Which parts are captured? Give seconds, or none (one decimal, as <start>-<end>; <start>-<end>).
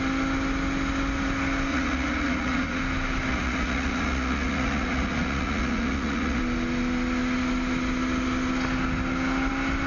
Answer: 0.0-1.7; 2.8-3.3; 6.4-9.9